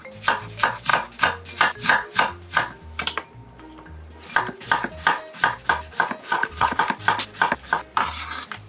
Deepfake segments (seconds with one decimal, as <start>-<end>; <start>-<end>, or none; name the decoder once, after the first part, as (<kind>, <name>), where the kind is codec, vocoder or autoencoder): 6.2-6.8 (codec, HILCodec)